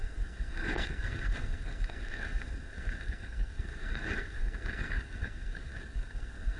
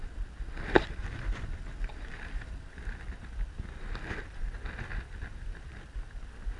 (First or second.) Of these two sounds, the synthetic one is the first